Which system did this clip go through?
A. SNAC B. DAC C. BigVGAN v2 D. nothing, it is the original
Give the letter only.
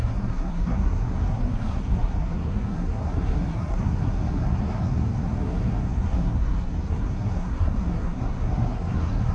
A